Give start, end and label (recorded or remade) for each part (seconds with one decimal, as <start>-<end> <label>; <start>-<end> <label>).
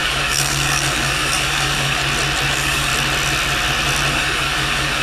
0.0-2.0 remade; 2.0-2.5 recorded; 2.5-2.9 remade; 2.9-4.1 recorded; 4.1-5.0 remade